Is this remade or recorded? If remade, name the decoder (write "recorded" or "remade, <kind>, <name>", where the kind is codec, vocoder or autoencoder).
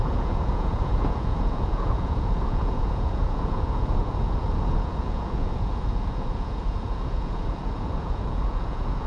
remade, vocoder, Vocos